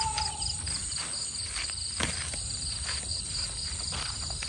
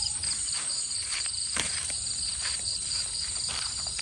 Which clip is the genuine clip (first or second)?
first